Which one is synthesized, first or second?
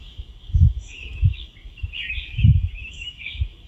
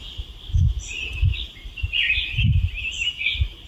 first